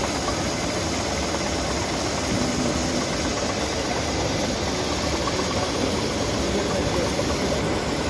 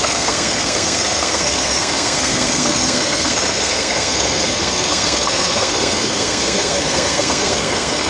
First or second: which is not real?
second